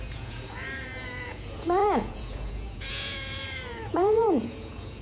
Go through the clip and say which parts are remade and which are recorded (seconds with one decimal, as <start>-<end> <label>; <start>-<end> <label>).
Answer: 0.0-5.0 remade